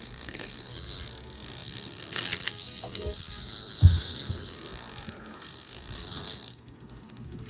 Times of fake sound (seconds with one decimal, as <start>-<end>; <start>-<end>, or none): 0.0-7.5